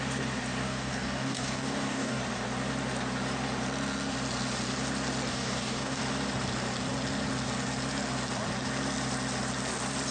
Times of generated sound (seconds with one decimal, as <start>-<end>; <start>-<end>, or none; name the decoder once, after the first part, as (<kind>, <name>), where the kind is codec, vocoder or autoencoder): 0.6-2.2 (codec, DAC); 5.3-6.0